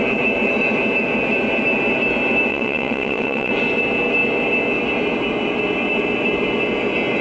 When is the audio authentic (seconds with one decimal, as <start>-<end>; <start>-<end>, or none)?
0.0-2.5; 3.5-7.2